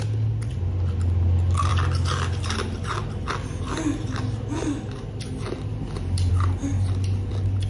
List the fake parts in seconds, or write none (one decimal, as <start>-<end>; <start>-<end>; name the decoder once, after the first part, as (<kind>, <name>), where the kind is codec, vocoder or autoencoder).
none